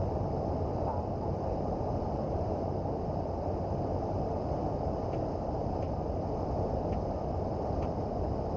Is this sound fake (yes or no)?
no